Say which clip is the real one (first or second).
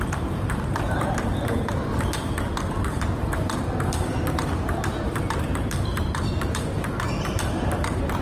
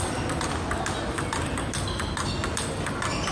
second